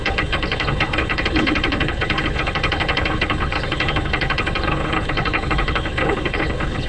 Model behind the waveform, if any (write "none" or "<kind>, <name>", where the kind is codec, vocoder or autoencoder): codec, HILCodec